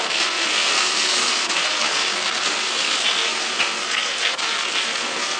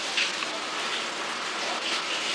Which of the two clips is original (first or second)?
second